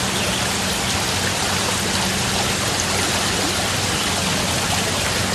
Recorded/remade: recorded